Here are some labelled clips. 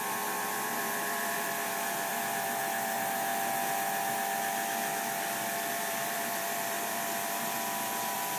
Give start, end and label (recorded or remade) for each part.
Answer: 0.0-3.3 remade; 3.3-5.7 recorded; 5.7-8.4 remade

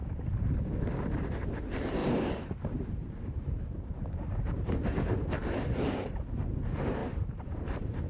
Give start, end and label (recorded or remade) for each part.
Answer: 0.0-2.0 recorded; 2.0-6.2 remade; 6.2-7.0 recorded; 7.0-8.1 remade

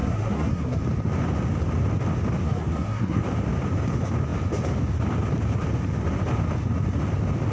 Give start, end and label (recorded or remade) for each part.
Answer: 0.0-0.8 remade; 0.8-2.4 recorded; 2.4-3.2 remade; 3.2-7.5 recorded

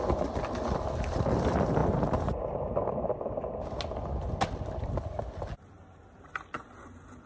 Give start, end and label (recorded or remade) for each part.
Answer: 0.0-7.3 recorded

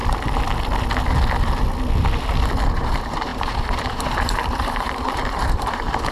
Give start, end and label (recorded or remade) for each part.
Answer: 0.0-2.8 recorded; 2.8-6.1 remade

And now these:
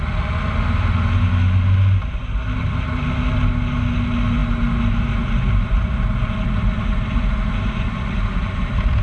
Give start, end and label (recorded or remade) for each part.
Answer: 0.0-9.0 recorded

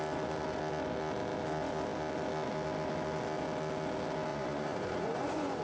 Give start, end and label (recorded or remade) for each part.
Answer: 0.0-4.3 recorded; 4.3-5.6 remade